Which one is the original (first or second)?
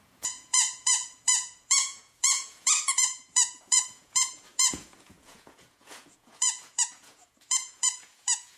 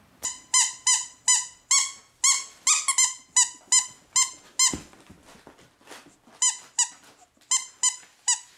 second